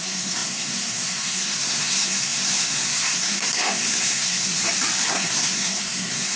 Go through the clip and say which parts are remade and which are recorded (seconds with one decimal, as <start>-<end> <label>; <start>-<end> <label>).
0.0-4.6 remade; 4.6-5.1 recorded; 5.1-6.4 remade